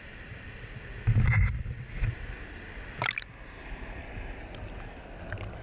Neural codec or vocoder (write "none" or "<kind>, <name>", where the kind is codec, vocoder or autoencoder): none